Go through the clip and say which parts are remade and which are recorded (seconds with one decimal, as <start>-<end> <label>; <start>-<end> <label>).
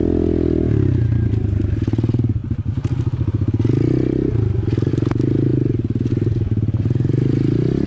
0.0-7.9 recorded